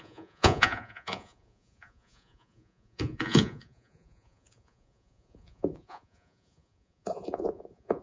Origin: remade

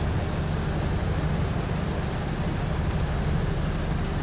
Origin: recorded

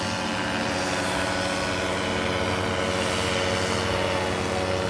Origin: recorded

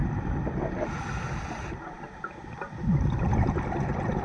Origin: recorded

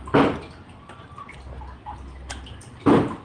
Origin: recorded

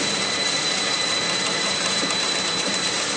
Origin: remade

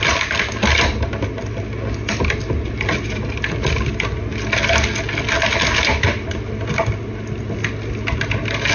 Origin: recorded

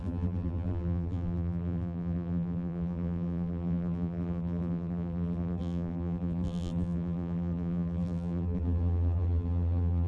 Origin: remade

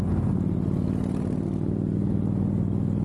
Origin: recorded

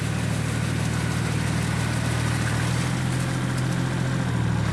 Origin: recorded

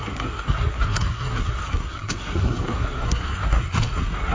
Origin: remade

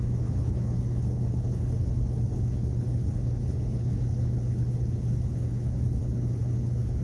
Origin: remade